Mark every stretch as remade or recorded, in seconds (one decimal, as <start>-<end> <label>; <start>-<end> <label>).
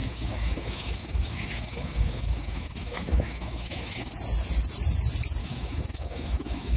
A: 0.0-4.1 remade; 4.1-5.4 recorded; 5.4-6.8 remade